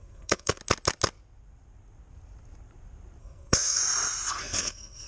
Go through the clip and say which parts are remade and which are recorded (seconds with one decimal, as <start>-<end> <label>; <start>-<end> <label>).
0.0-0.6 remade; 0.6-3.2 recorded; 3.2-3.8 remade; 3.8-4.4 recorded; 4.4-5.1 remade